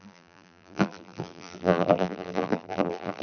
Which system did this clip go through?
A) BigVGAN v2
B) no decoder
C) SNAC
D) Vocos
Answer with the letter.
A